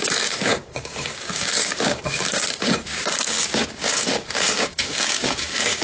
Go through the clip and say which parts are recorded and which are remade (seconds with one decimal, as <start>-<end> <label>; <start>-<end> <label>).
0.0-5.8 remade